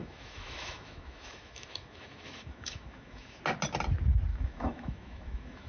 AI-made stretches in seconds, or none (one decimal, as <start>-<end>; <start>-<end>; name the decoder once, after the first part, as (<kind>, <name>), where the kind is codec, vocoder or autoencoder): 0.0-3.4 (autoencoder, DAC-VAE); 4.3-5.7